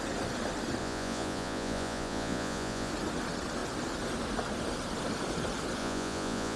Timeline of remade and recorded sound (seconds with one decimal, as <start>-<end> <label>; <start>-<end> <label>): 0.0-0.8 recorded; 0.8-2.9 remade; 2.9-5.8 recorded; 5.8-6.6 remade

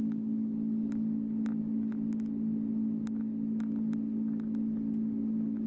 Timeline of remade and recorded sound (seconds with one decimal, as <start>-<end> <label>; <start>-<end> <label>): 0.0-5.7 recorded

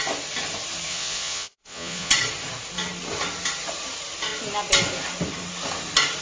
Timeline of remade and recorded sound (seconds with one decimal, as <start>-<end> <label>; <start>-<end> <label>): 0.0-0.9 recorded; 0.9-2.1 remade; 2.1-6.2 recorded